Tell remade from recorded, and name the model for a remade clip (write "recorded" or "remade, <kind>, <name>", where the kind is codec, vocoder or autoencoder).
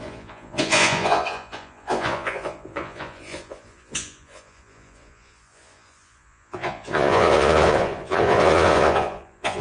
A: remade, vocoder, Vocos